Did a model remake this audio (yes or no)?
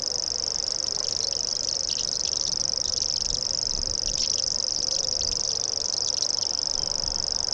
no